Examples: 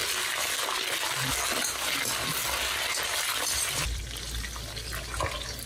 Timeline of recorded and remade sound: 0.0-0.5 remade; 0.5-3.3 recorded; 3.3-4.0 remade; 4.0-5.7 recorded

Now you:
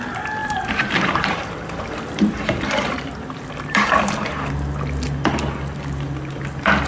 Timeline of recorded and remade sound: 0.0-0.4 recorded; 0.4-4.5 remade; 4.5-6.9 recorded